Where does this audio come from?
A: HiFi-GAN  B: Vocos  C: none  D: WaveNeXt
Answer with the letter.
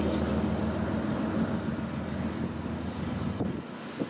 C